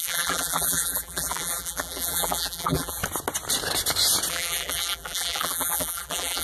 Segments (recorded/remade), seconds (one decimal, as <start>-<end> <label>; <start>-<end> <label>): 0.0-3.0 remade; 3.0-4.3 recorded; 4.3-6.4 remade